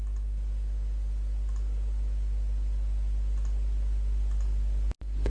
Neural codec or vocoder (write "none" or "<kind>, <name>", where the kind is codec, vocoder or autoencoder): none